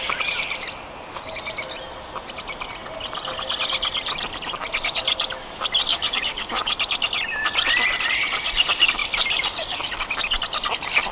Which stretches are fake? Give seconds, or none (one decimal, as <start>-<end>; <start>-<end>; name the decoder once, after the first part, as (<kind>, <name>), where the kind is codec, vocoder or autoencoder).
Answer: 5.9-6.7 (codec, DAC)